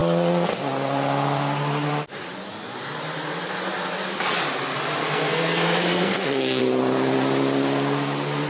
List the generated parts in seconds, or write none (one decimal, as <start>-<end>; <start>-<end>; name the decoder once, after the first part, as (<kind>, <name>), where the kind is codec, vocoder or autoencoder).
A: 5.0-6.6 (codec, SNAC)